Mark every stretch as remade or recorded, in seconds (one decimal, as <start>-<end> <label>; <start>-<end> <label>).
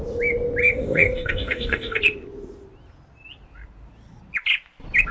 0.0-0.6 recorded; 0.6-2.0 remade; 2.0-5.1 recorded